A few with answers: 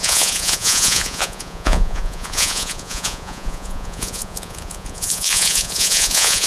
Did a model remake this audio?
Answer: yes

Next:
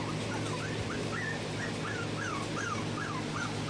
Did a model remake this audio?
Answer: no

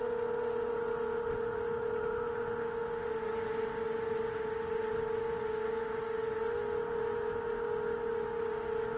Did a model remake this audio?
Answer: no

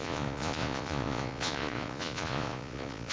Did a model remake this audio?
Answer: yes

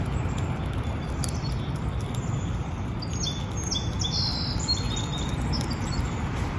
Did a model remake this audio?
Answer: no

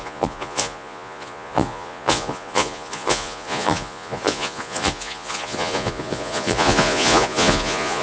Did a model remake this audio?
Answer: yes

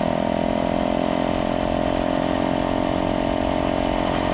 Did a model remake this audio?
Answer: no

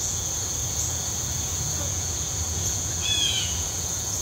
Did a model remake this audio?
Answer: yes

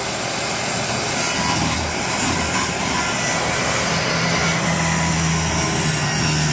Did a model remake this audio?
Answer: no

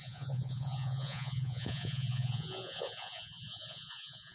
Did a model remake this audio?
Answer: yes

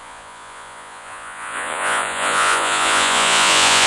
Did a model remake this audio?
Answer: yes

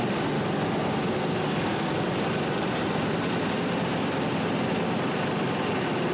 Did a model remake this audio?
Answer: no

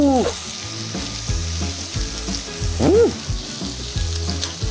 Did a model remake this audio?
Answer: no